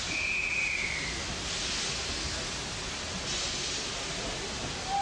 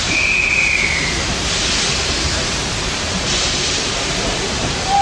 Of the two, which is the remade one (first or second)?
second